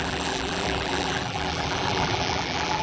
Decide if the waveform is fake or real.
fake